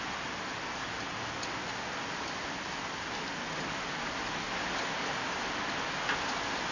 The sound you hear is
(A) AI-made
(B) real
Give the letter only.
B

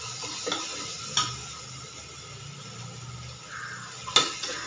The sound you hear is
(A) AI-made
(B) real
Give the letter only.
B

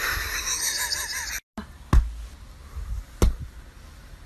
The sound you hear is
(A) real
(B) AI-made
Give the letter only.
A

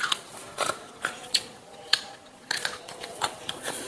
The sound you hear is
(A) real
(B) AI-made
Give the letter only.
B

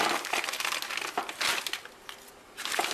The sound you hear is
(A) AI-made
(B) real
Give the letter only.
B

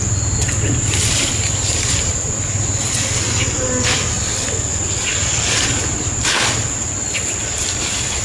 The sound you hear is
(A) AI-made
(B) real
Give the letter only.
B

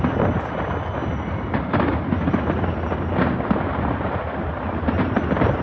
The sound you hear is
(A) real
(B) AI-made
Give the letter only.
A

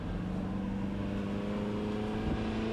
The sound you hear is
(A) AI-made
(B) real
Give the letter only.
B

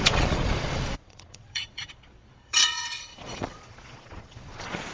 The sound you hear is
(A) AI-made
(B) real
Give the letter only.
A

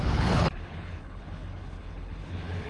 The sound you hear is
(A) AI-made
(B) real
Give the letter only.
A